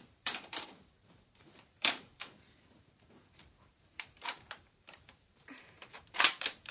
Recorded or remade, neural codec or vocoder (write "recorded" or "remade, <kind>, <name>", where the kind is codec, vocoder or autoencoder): remade, vocoder, BigVGAN v2